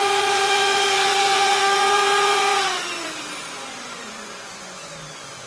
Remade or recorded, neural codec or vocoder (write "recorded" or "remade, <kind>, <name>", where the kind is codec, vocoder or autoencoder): remade, vocoder, Vocos